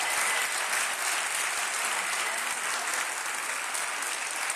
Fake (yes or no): no